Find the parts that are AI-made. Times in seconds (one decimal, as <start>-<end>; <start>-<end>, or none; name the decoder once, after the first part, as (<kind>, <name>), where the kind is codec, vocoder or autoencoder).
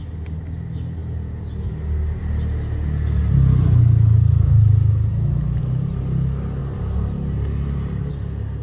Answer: none